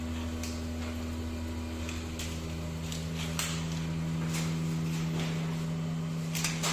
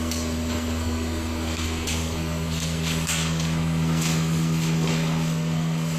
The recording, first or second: first